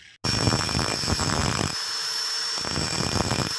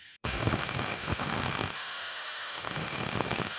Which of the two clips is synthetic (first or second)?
second